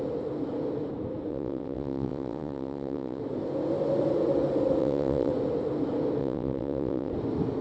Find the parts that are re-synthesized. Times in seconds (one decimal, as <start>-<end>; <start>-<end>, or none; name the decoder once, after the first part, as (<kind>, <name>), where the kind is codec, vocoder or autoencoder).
1.3-3.2 (vocoder, WaveNeXt); 4.8-5.3; 6.2-7.1